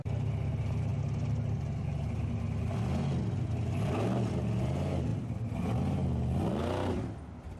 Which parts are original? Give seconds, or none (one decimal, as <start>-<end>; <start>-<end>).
0.0-7.6